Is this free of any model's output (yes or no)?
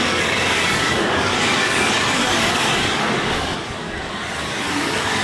no